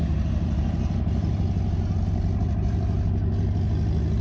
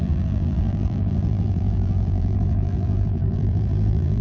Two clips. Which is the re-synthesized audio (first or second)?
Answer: second